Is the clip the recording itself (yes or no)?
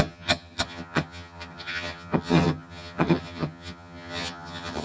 no